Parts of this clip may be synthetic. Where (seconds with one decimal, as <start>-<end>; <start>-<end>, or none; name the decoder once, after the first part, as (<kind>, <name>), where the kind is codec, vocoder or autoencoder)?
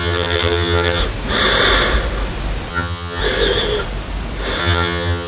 0.0-1.0 (vocoder, HiFi-GAN); 2.7-3.2; 4.6-5.3